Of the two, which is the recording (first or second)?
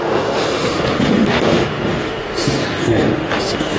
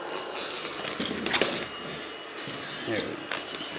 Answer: second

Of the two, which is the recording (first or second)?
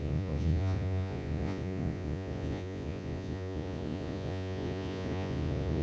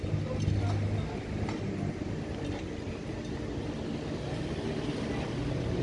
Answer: second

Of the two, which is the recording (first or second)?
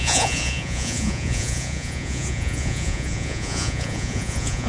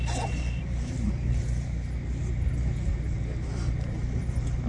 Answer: second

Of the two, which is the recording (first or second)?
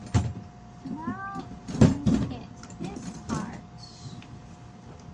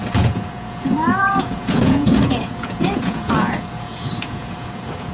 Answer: first